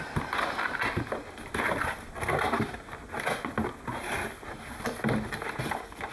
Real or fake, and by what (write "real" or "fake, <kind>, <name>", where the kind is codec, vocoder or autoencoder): real